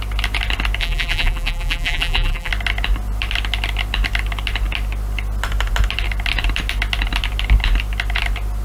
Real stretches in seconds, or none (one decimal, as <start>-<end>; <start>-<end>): 0.0-0.8; 2.5-8.6